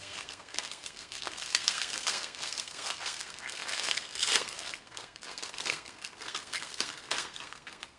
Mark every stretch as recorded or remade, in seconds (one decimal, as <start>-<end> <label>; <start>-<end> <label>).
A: 0.0-8.0 remade